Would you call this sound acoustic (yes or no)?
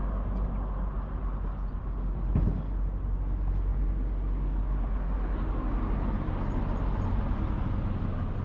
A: yes